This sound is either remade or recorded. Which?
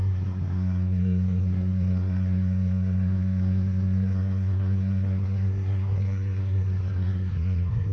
remade